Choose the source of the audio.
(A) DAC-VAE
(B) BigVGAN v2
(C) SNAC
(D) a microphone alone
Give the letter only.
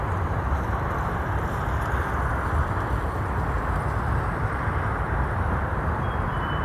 D